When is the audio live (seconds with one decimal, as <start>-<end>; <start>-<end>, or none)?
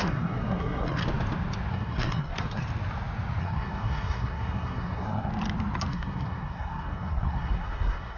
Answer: 1.0-1.7; 2.6-3.4; 5.3-5.9